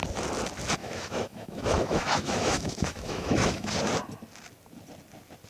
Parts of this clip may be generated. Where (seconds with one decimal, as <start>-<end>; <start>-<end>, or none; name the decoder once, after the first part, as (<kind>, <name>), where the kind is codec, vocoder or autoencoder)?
0.8-3.7 (autoencoder, DAC-VAE)

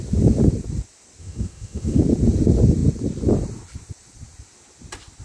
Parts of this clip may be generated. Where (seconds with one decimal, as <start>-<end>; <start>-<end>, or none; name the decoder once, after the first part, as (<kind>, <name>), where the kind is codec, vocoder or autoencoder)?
1.2-2.0 (autoencoder, DAC-VAE)

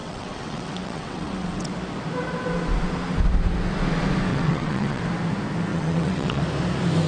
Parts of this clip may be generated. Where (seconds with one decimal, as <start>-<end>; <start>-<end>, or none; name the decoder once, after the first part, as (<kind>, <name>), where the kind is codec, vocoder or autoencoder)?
0.0-1.7 (vocoder, WaveNeXt); 4.3-5.0; 5.7-6.4

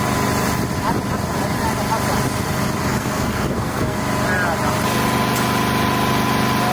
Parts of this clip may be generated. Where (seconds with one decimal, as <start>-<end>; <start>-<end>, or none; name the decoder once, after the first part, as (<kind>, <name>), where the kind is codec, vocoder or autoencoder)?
2.9-4.0 (codec, SNAC)

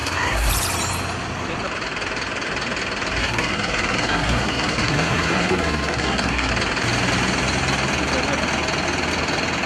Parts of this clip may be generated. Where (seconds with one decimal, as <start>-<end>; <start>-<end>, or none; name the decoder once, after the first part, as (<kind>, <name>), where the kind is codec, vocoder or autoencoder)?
0.0-0.5 (codec, SNAC); 3.2-6.5